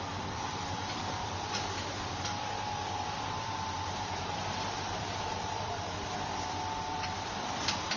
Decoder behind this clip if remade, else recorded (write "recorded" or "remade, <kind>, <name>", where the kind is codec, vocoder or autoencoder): remade, vocoder, BigVGAN v2